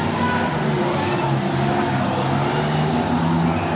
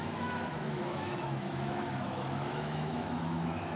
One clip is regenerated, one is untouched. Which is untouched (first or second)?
first